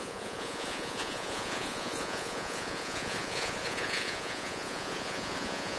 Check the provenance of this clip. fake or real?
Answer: fake